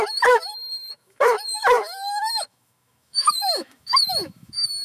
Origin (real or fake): fake